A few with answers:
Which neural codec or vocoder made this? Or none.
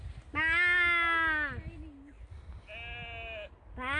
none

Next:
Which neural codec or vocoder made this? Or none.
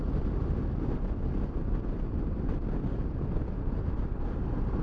none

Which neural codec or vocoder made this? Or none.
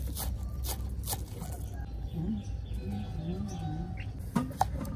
none